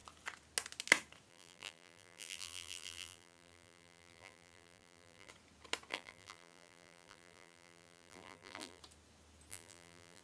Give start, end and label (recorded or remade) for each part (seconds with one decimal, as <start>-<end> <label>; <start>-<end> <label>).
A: 0.0-1.3 recorded; 1.3-5.3 remade; 5.3-5.9 recorded; 5.9-8.8 remade; 8.8-9.5 recorded; 9.5-10.2 remade